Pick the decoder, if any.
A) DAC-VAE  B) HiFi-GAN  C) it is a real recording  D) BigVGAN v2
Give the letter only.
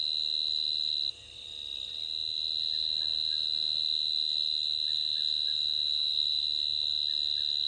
C